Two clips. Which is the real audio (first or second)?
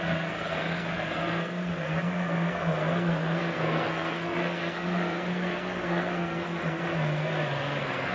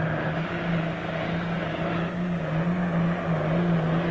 second